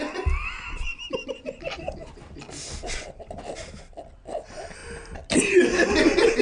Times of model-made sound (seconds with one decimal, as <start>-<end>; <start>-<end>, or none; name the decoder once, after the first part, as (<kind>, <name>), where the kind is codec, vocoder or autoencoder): 0.9-2.1 (vocoder, BigVGAN v2)